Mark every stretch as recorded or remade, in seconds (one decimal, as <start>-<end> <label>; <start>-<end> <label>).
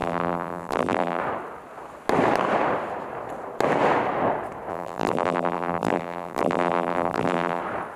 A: 0.0-1.2 remade; 1.2-4.7 recorded; 4.7-7.6 remade; 7.6-8.0 recorded